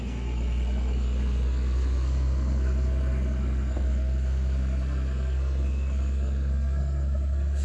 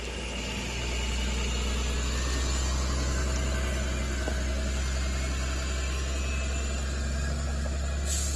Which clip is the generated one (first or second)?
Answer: first